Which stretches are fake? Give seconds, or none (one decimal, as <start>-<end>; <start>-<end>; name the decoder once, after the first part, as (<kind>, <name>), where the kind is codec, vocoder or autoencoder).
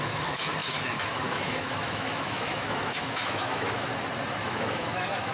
0.0-3.9 (autoencoder, DAC-VAE); 4.4-5.3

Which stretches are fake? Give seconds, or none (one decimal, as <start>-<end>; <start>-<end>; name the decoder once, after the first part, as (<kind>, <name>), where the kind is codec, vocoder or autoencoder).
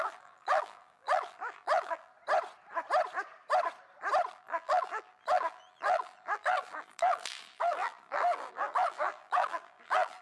0.0-2.1 (vocoder, BigVGAN v2); 4.3-10.2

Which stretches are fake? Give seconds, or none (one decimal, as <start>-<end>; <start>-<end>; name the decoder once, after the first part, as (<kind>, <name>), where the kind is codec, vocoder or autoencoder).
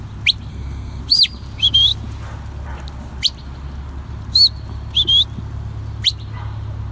0.5-1.0 (codec, SNAC)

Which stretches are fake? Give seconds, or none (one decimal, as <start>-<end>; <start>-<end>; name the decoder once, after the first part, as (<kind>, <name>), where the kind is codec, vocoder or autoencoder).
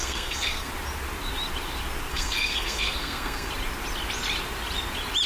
0.0-0.7 (codec, SNAC); 2.1-3.5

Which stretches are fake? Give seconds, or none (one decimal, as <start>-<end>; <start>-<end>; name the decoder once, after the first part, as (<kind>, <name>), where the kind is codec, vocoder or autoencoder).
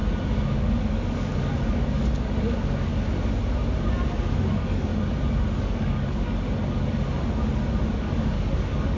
0.6-2.9 (codec, DAC); 4.4-4.9; 5.6-6.3; 7.9-9.0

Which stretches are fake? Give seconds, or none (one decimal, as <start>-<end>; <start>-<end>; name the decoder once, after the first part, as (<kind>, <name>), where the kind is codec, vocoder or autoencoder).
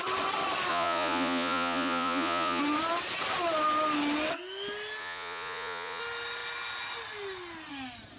0.7-2.6 (vocoder, Vocos); 5.0-6.0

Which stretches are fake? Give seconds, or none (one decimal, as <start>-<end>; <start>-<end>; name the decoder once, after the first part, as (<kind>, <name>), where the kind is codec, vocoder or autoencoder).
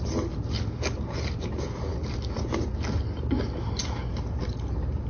none